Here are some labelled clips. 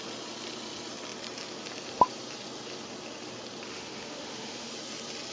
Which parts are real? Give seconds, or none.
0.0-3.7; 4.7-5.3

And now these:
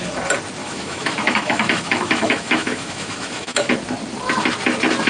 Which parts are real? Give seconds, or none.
0.0-0.6; 3.7-5.1

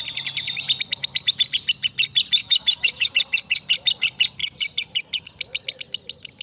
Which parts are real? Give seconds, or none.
0.0-2.4; 3.1-6.4

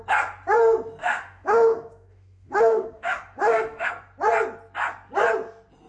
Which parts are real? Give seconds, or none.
0.0-1.0; 3.9-5.9

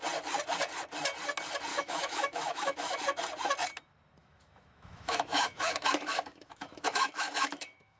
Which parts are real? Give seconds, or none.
0.0-1.7; 3.0-4.2

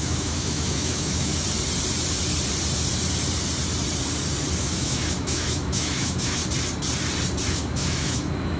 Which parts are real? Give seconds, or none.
1.3-4.6; 6.4-7.5

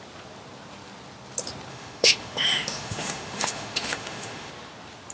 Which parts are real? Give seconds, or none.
0.0-1.7; 4.5-5.1